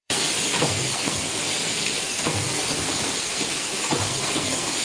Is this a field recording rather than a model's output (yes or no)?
no